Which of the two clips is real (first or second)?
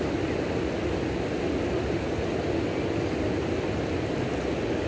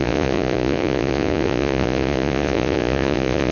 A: first